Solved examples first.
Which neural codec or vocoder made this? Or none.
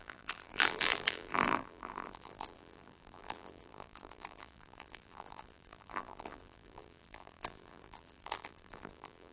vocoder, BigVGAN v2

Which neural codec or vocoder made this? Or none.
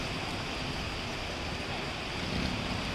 none